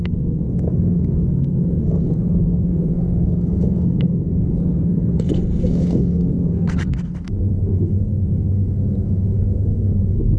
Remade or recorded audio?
remade